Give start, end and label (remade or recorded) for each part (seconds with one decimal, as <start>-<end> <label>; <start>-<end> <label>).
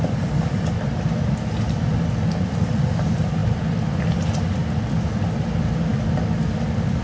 0.0-7.0 remade